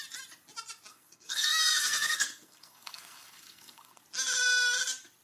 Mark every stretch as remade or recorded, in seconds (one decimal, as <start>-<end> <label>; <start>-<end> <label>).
0.0-0.9 recorded; 0.9-4.0 remade; 4.0-5.2 recorded